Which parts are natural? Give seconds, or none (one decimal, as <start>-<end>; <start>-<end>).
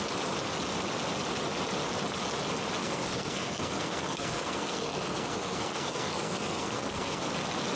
0.0-2.8; 7.2-7.8